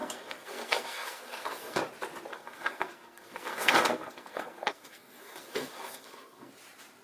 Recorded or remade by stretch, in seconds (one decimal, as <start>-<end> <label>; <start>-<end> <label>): 0.0-1.8 remade; 1.8-2.3 recorded; 2.3-6.5 remade; 6.5-7.0 recorded